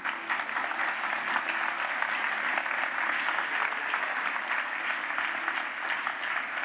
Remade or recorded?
recorded